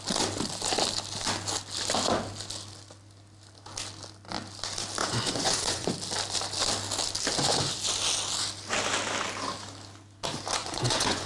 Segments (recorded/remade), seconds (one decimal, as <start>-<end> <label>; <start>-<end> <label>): 0.0-5.0 recorded; 5.0-5.9 remade; 5.9-10.6 recorded; 10.6-11.3 remade